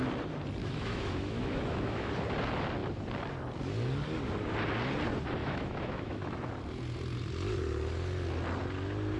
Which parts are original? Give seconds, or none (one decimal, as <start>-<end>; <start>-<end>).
0.0-0.6; 2.1-5.4; 6.5-9.2